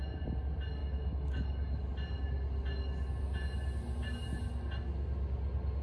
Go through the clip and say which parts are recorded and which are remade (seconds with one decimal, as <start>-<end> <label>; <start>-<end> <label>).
0.0-0.8 recorded; 0.8-1.9 remade; 1.9-5.8 recorded